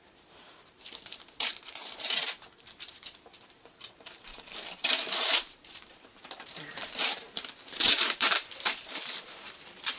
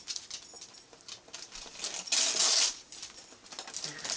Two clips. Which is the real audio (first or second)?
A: second